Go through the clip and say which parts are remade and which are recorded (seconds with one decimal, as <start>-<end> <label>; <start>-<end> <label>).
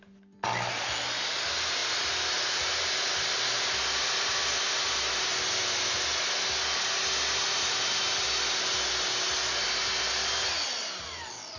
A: 0.0-11.6 recorded